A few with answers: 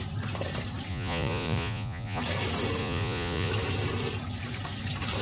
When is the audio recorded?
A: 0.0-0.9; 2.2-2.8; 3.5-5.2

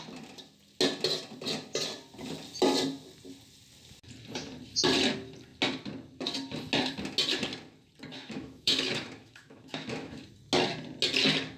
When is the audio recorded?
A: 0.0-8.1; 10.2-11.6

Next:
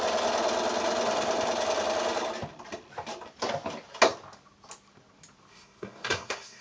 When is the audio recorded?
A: 0.0-5.5

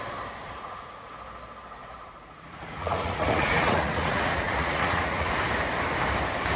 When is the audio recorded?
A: 0.0-0.4; 1.1-1.8; 5.3-6.6

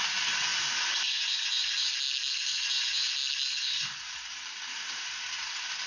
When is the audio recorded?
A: 0.0-5.9

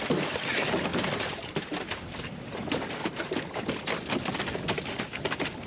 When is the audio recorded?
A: 0.0-5.7

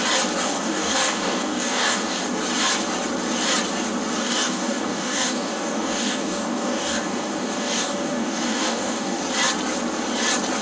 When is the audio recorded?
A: 0.0-0.4; 2.4-4.2; 9.2-10.6